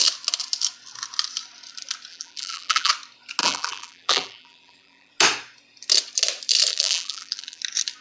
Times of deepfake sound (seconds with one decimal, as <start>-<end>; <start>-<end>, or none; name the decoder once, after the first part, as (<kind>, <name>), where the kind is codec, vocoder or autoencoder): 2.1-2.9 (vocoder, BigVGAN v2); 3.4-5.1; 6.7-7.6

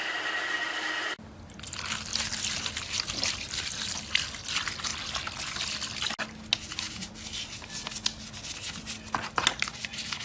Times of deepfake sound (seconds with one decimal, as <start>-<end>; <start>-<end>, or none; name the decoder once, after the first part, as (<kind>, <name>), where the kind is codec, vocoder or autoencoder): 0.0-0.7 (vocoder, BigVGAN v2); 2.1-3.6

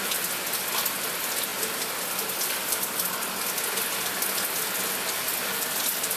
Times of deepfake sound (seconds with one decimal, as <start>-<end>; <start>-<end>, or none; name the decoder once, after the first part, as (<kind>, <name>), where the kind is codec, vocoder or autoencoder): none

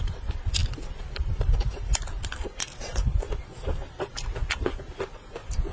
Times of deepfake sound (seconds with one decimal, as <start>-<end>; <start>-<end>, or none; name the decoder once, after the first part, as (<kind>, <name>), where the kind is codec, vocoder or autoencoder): 0.0-4.4 (vocoder, BigVGAN v2)

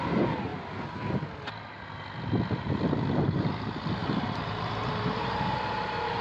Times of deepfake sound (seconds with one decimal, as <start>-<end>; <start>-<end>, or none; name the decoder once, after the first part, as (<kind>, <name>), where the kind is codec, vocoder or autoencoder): 0.0-0.5 (vocoder, BigVGAN v2); 3.2-6.2

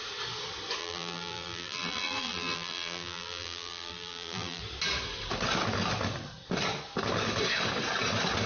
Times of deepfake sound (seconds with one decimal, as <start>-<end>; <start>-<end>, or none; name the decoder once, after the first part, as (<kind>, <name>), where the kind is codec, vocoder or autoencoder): 0.8-4.6 (vocoder, BigVGAN v2)

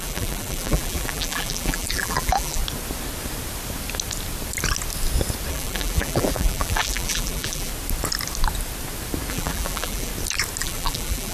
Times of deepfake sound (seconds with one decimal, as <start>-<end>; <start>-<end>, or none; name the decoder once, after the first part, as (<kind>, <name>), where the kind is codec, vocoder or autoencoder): 0.0-2.6 (vocoder, BigVGAN v2); 5.5-7.7; 9.3-10.1; 10.6-11.3